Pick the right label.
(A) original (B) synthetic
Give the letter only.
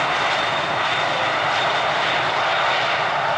A